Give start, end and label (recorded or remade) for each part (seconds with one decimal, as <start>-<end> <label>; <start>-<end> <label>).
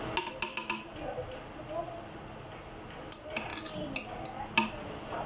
0.0-5.3 recorded